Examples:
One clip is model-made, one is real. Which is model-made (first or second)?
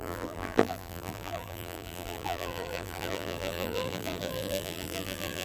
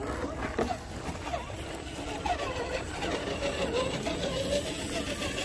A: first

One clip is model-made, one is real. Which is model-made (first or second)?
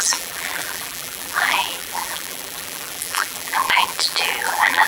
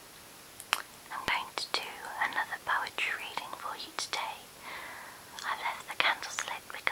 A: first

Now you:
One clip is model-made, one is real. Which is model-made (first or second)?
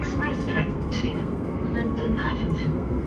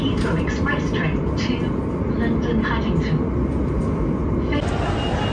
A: first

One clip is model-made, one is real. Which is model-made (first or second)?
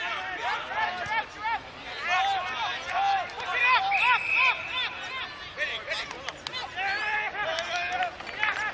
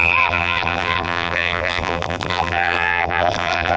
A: second